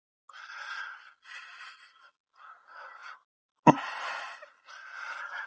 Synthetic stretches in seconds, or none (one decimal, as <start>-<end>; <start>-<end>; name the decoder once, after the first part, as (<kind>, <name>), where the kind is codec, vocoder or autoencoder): none